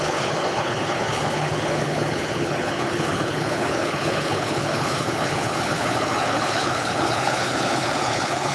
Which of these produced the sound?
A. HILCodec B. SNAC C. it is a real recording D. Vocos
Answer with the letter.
A